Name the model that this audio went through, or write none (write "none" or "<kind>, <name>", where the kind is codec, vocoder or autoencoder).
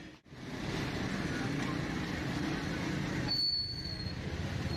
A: none